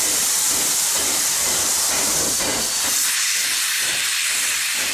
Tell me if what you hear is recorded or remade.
remade